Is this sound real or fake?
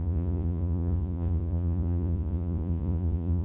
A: fake